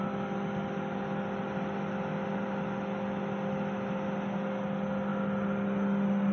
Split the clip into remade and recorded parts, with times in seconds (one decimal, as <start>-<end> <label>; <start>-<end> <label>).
0.0-6.3 recorded